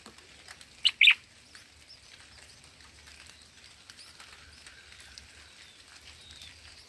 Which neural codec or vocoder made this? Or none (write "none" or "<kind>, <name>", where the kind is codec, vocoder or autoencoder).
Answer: none